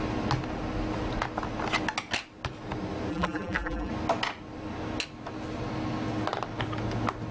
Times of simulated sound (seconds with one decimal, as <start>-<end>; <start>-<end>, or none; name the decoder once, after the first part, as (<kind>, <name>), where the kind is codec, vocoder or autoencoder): 3.1-3.9 (vocoder, BigVGAN v2)